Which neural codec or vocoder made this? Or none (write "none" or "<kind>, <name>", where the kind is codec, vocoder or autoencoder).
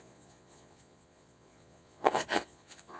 vocoder, Vocos